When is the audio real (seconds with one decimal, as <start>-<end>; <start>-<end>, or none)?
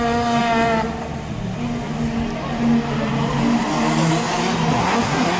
0.0-4.8